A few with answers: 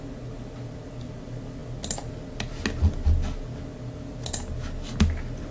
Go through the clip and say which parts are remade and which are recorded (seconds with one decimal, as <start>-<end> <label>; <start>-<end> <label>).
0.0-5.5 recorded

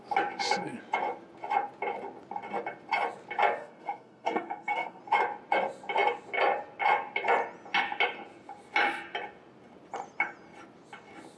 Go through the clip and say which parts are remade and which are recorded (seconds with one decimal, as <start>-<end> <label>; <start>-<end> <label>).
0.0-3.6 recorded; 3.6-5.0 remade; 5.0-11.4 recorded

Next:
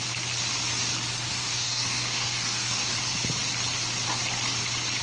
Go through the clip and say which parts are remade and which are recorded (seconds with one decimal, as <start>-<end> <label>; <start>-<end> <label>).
0.0-1.3 recorded; 1.3-2.9 remade; 2.9-5.0 recorded

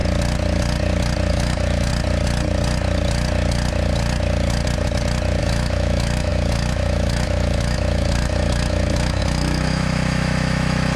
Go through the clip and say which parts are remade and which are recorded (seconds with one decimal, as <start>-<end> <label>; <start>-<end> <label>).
0.0-1.3 recorded; 1.3-1.9 remade; 1.9-5.4 recorded; 5.4-11.0 remade